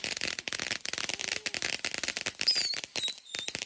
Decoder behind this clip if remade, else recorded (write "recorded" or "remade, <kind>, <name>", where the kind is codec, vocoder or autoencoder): recorded